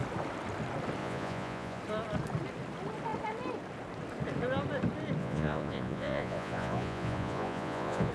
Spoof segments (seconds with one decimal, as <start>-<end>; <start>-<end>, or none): 1.0-1.8; 5.2-8.1